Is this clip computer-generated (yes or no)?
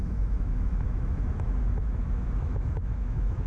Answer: yes